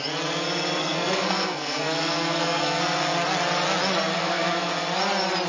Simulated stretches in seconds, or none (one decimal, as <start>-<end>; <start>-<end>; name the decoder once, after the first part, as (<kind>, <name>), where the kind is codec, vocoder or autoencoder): 0.8-2.8 (codec, SNAC); 4.1-4.7